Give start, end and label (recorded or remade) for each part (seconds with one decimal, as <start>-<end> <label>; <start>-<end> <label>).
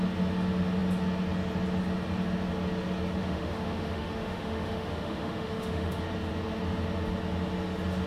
0.0-3.2 recorded; 3.2-6.0 remade; 6.0-8.1 recorded